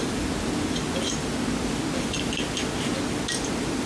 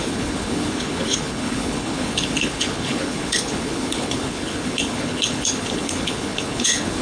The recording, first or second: first